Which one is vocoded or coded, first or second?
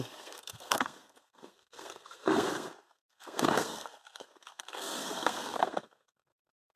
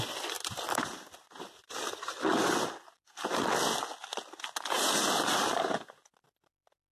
first